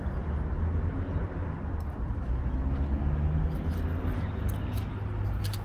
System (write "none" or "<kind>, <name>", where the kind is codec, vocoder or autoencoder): none